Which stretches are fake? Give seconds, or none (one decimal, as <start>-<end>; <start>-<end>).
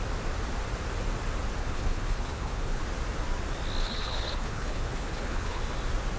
1.6-2.8; 3.8-5.6